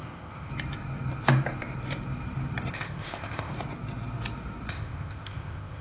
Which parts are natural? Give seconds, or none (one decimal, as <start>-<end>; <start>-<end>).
0.5-2.7; 3.5-4.7